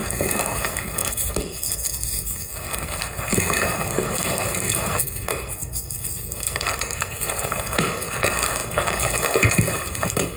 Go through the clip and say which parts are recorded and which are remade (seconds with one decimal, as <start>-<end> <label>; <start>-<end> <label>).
0.0-10.4 remade